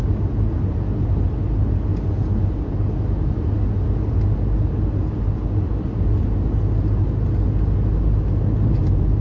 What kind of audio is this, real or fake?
real